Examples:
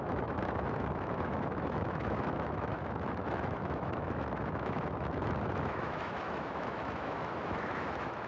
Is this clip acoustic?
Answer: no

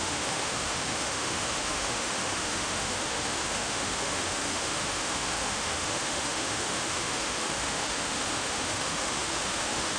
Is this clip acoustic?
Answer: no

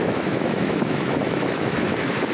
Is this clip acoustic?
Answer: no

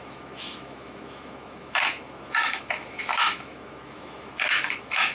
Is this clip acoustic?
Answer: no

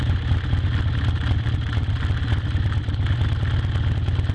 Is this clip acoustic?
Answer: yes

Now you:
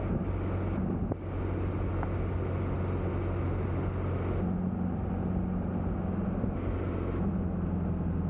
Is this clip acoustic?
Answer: yes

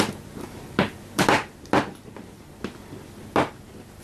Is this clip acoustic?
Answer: yes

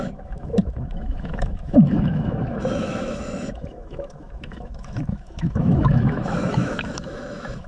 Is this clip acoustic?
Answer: no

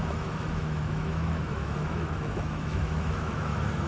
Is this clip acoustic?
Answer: no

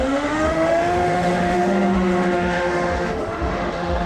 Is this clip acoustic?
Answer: no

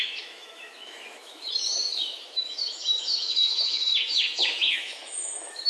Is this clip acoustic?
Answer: no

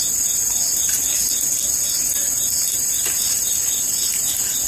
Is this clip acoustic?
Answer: yes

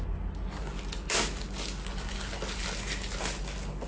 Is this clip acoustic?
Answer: yes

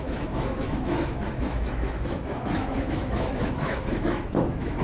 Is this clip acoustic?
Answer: no